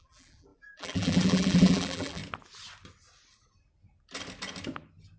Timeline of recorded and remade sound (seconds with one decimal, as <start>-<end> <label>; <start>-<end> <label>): 0.0-2.2 remade; 2.2-5.2 recorded